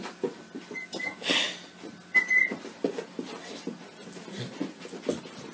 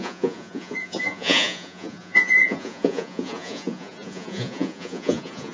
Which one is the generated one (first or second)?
second